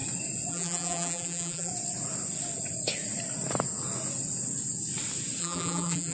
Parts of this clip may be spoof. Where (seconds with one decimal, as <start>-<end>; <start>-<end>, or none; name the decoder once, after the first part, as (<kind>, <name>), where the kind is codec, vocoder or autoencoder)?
0.5-1.7 (vocoder, BigVGAN v2); 5.4-6.1